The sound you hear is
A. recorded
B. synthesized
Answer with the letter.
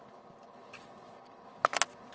A